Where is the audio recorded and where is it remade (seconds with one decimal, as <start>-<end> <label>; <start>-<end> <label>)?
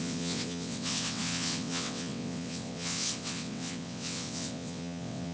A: 0.0-5.3 remade